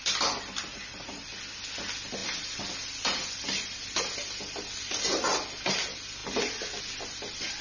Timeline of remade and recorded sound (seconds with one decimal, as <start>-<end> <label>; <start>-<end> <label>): 0.0-0.7 recorded; 0.7-1.4 remade; 1.4-7.6 recorded